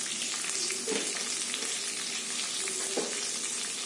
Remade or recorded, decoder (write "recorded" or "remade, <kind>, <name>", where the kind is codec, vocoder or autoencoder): recorded